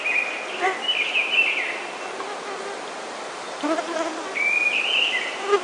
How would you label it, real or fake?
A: real